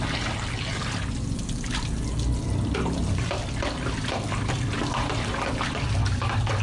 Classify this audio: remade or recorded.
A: recorded